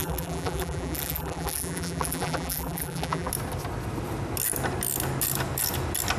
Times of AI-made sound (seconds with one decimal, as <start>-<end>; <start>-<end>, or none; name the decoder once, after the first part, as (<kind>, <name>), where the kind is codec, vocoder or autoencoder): 0.0-3.3 (vocoder, BigVGAN v2)